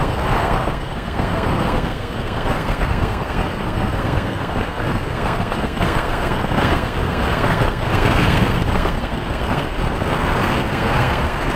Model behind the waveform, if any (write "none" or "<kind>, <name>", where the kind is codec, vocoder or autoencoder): codec, SNAC